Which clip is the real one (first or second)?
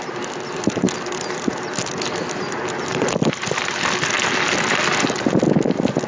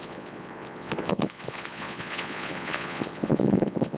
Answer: first